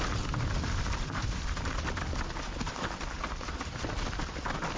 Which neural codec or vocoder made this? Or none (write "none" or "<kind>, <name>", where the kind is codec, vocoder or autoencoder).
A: none